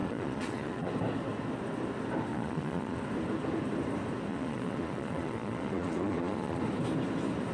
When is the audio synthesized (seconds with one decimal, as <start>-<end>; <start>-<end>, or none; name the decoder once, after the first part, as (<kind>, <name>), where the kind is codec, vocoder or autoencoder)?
0.0-0.9 (vocoder, Vocos); 2.3-3.0; 4.3-6.6

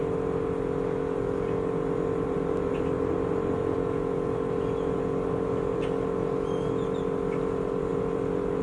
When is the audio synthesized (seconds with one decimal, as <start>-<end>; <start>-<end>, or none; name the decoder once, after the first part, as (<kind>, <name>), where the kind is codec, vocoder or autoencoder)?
none

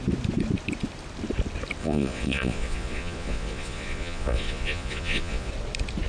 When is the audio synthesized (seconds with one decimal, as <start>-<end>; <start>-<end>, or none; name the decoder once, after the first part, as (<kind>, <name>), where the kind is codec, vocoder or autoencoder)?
1.8-5.5 (vocoder, Vocos)

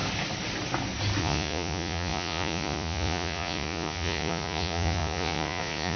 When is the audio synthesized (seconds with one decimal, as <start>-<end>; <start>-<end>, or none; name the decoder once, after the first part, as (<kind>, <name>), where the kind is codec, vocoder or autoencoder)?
1.2-6.0 (vocoder, Vocos)

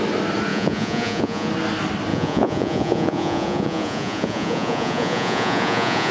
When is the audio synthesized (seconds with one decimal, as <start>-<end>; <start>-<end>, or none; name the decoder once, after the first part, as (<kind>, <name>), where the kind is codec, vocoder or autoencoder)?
0.5-1.5 (vocoder, Vocos); 2.1-6.1

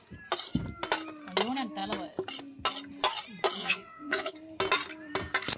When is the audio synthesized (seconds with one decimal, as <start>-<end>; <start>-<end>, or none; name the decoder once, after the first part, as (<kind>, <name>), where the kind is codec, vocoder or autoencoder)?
3.6-4.3 (vocoder, Vocos)